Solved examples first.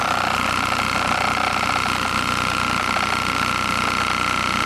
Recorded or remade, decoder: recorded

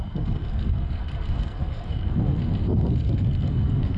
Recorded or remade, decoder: remade, codec, SNAC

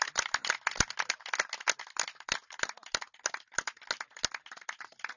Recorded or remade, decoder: recorded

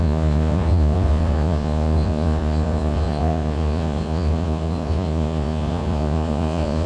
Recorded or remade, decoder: remade, vocoder, Vocos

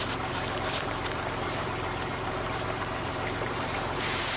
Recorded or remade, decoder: remade, vocoder, BigVGAN v2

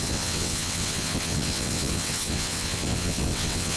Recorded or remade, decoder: remade, vocoder, WaveNeXt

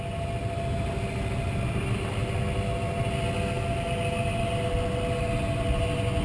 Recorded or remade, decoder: recorded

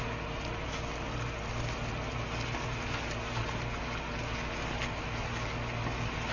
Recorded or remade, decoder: recorded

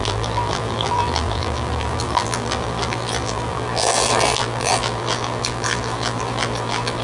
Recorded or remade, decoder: remade, vocoder, BigVGAN v2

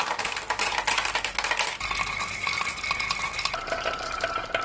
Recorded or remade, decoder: recorded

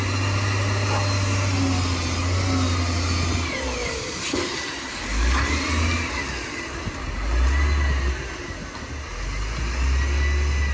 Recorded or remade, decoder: recorded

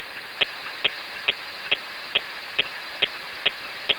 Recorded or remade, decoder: recorded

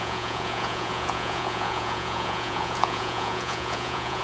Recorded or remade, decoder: remade, vocoder, Vocos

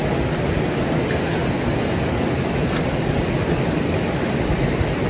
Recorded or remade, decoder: recorded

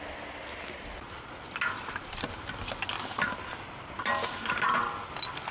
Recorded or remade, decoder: recorded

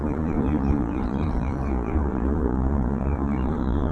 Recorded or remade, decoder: remade, vocoder, Vocos